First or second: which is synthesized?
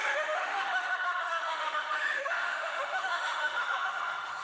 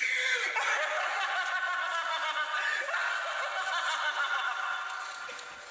first